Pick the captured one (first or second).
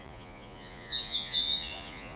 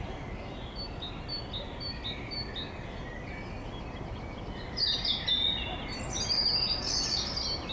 second